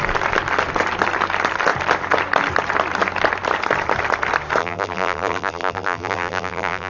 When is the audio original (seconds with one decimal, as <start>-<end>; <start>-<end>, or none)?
0.0-4.6